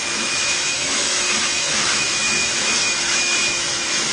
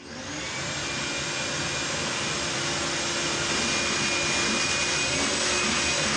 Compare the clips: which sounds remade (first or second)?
first